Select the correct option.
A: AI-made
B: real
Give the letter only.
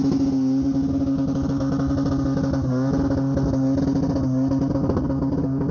B